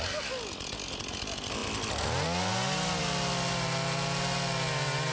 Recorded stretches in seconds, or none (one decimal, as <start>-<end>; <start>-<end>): 0.0-5.1

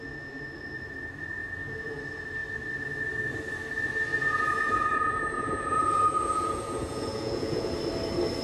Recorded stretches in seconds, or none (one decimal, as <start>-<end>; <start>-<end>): 0.0-1.4; 2.0-4.1; 7.7-8.4

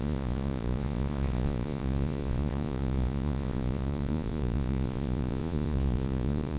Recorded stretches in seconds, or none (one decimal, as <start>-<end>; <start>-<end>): none

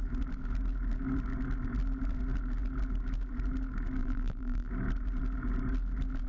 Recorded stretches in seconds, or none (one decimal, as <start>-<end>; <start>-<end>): 0.0-4.0; 4.7-6.3

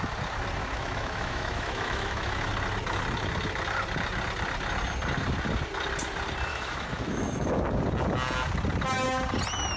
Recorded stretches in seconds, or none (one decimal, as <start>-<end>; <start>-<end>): 0.0-0.6; 2.5-6.5; 7.8-9.8

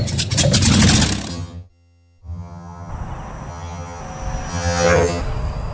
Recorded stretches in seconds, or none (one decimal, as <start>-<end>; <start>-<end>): 0.0-1.3; 2.9-3.5; 4.0-4.5; 5.2-5.7

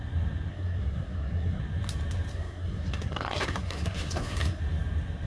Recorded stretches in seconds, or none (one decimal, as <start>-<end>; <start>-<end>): 0.0-0.5; 1.6-2.3; 4.6-5.3